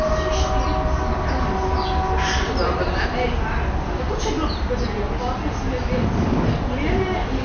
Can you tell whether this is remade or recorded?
recorded